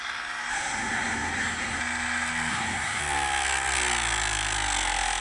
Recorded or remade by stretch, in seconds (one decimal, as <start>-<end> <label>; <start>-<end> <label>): 0.0-0.5 recorded; 0.5-1.8 remade; 1.8-2.5 recorded; 2.5-3.0 remade; 3.0-5.2 recorded